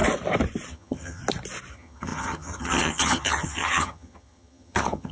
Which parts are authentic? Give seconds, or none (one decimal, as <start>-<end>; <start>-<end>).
0.0-0.7; 1.2-1.7